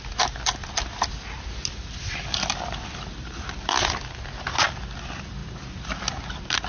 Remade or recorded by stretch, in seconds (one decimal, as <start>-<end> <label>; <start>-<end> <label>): 0.0-6.7 recorded

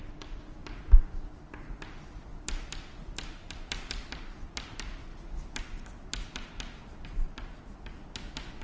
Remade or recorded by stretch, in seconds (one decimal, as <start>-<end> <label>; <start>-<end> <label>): 0.0-8.6 recorded

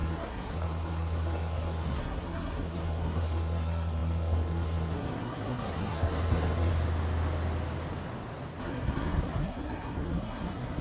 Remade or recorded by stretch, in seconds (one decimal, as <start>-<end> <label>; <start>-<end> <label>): 0.0-6.7 remade; 6.7-8.6 recorded; 8.6-10.8 remade

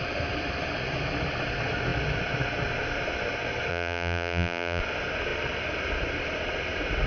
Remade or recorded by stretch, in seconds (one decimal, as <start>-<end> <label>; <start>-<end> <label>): 0.0-3.7 recorded; 3.7-4.8 remade; 4.8-7.1 recorded

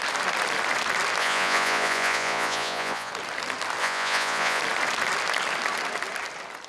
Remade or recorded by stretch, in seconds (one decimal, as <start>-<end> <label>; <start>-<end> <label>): 0.0-1.2 recorded; 1.2-3.1 remade; 3.1-3.8 recorded; 3.8-4.6 remade; 4.6-6.7 recorded